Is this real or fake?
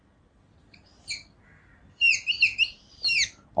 real